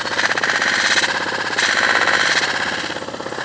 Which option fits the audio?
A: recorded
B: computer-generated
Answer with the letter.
A